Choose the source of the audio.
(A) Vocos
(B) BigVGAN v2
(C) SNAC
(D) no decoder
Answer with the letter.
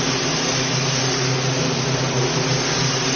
D